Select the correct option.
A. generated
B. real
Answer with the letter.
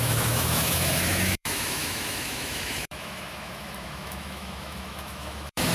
A